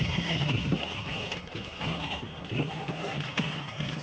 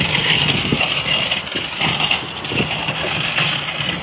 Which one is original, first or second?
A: second